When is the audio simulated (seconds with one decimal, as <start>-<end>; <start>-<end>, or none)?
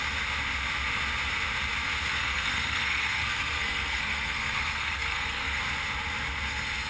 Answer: 2.2-5.6